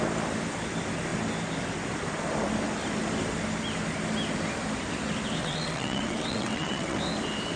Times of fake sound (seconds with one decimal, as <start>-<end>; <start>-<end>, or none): 5.4-7.0